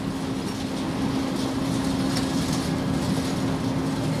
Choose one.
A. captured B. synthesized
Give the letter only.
A